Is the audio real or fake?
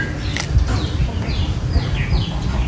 real